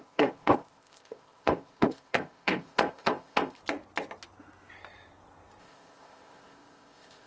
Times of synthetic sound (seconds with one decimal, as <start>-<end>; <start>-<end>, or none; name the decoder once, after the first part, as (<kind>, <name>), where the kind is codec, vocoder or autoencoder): 0.0-3.6 (codec, ZipCodec); 5.6-7.3